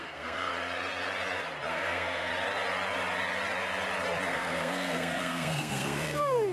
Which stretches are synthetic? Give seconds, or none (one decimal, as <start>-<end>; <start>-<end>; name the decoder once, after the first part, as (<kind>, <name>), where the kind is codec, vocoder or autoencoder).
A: 0.0-0.5 (codec, SNAC); 1.7-2.3; 4.3-6.5

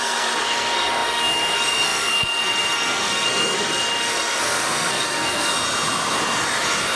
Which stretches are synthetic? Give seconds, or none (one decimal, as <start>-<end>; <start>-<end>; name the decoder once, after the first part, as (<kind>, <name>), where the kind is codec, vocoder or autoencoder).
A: 0.0-5.5 (codec, SNAC)

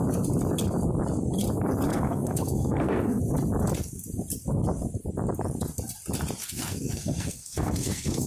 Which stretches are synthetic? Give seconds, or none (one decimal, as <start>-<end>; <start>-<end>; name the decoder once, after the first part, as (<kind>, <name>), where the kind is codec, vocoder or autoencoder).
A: 1.9-3.2 (codec, SNAC); 6.4-8.3

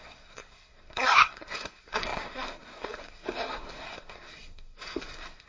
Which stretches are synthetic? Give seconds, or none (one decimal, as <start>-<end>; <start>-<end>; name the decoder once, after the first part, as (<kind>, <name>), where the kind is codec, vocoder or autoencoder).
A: 0.0-5.5 (codec, SNAC)

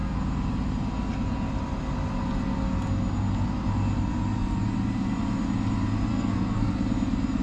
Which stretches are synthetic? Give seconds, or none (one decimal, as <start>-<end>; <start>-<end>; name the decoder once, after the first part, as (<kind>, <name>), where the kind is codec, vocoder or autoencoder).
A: 6.1-6.7 (codec, SNAC)

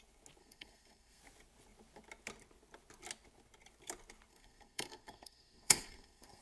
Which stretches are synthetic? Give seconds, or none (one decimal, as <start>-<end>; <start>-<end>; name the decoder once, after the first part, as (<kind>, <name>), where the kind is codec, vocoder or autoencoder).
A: 0.4-1.2 (codec, SNAC); 4.3-6.4